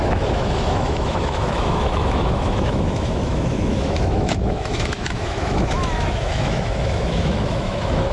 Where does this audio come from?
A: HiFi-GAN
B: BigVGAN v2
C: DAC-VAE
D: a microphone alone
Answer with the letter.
C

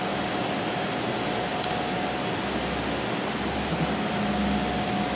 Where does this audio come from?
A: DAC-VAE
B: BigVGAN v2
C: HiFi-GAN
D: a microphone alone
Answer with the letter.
D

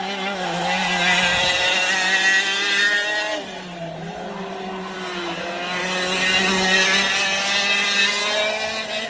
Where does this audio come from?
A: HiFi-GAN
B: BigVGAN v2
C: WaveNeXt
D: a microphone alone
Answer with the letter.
D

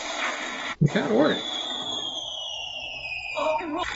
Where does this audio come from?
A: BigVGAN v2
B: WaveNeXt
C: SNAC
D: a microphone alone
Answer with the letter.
D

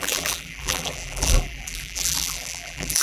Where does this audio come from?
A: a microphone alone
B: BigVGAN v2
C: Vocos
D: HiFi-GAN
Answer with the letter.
B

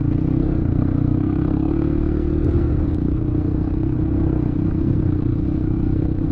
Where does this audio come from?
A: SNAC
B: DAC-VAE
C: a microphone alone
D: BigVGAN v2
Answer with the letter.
A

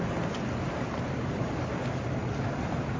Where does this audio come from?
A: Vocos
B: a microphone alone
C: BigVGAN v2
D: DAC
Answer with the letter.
B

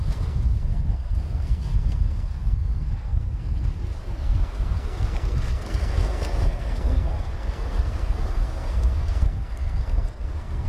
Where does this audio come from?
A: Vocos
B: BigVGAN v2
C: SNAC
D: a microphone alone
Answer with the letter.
C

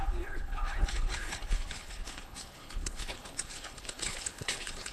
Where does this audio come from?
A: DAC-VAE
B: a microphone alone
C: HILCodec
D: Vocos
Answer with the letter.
C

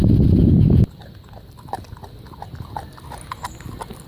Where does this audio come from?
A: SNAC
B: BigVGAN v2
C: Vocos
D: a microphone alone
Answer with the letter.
D